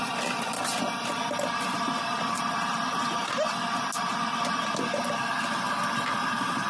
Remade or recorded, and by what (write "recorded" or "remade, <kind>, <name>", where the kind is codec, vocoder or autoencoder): recorded